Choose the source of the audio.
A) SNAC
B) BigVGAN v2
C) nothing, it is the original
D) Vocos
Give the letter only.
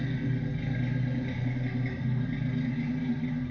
C